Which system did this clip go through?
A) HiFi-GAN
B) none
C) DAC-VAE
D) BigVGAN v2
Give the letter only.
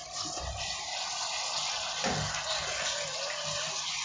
B